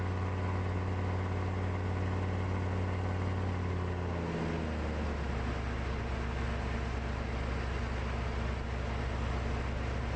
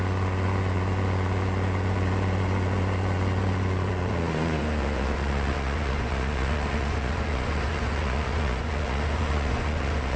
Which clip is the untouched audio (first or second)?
first